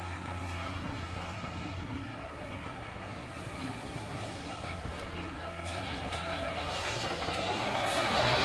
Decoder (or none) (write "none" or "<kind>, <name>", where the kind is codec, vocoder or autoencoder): codec, SNAC